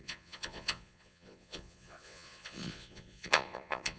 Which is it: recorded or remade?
remade